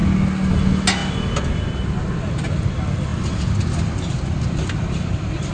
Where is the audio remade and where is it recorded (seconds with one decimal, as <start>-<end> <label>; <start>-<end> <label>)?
0.0-5.5 recorded